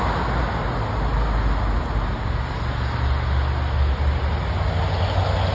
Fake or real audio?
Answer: real